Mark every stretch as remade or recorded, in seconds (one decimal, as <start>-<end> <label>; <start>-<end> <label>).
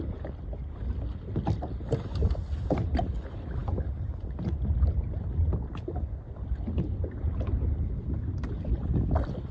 0.0-9.5 recorded